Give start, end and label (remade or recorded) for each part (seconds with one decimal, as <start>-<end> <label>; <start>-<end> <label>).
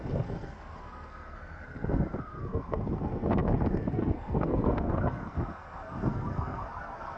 0.0-7.2 remade